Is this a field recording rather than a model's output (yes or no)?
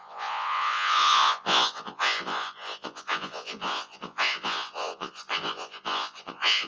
no